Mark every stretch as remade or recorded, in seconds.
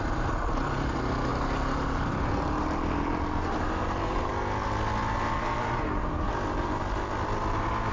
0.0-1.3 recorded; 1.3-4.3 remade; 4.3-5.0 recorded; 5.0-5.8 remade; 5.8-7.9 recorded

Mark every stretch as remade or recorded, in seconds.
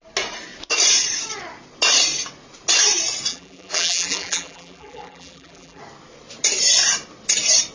0.0-3.3 recorded; 3.3-5.8 remade; 5.8-7.7 recorded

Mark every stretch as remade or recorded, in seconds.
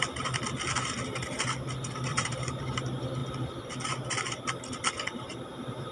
0.0-2.1 recorded; 2.1-2.6 remade; 2.6-5.9 recorded